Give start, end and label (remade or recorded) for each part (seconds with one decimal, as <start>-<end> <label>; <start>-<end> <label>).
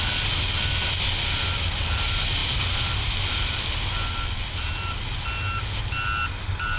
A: 0.0-6.8 recorded